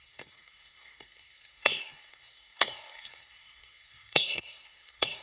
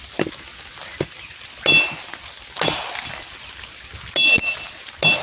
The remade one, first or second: first